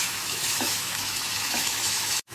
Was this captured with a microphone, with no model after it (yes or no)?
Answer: no